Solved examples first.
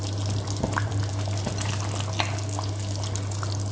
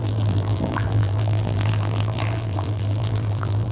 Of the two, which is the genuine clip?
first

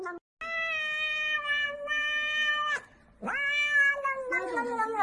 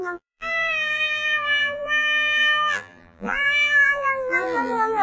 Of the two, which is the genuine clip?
first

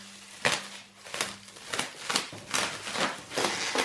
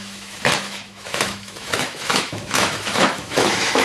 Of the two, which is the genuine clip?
first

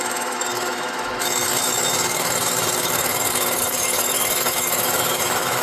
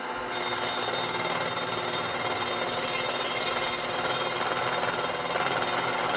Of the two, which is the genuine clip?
second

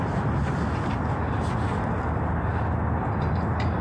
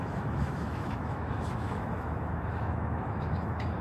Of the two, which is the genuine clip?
first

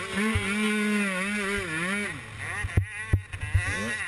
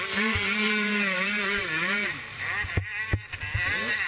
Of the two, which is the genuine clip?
first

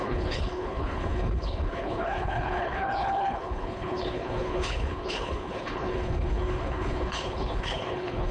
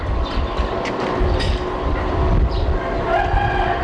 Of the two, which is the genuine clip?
second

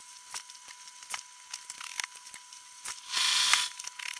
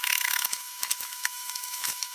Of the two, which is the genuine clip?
first